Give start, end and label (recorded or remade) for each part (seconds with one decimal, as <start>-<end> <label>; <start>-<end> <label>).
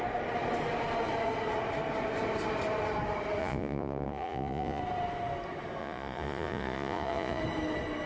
0.0-3.4 recorded; 3.4-4.8 remade; 4.8-5.8 recorded; 5.8-7.4 remade; 7.4-8.1 recorded